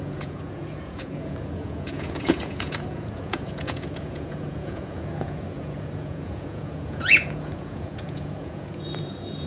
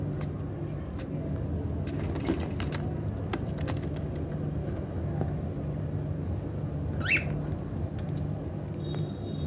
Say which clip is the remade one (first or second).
first